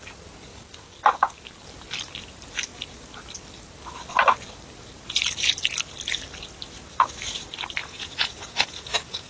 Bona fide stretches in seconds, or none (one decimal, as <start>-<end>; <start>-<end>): 0.0-7.8